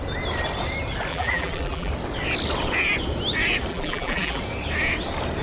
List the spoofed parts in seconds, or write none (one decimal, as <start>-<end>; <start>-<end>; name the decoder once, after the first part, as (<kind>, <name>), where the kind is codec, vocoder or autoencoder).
1.1-1.9 (vocoder, BigVGAN v2); 3.7-4.4